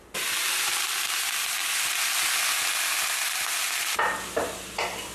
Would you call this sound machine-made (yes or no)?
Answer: no